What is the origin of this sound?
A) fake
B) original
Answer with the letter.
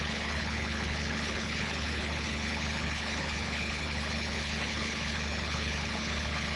A